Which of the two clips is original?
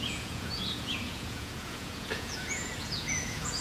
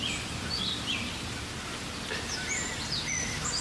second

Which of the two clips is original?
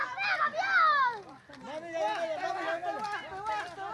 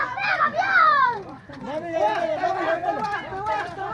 first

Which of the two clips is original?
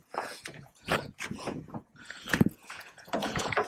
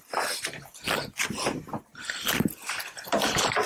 second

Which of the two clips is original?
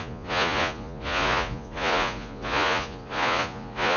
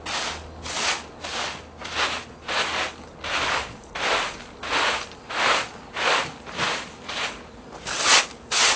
second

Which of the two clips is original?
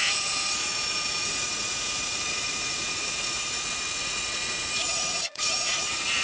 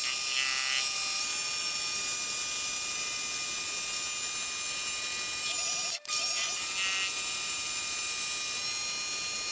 second